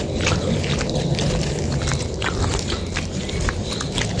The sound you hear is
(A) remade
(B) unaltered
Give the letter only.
B